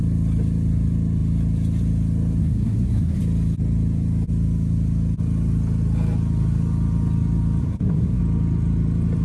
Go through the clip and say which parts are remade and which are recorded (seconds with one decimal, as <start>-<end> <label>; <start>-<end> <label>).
0.0-2.4 recorded; 2.4-3.2 remade; 3.2-7.6 recorded; 7.6-8.2 remade; 8.2-9.2 recorded